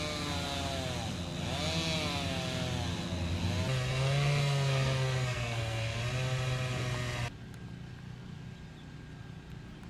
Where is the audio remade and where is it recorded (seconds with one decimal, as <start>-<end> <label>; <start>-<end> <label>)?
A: 0.0-3.9 recorded; 3.9-6.0 remade; 6.0-9.9 recorded